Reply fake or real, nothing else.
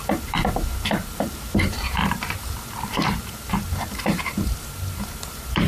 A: fake